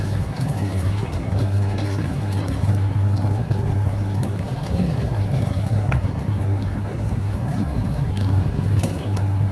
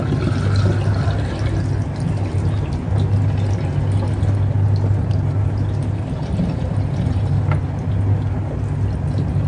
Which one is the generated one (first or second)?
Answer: first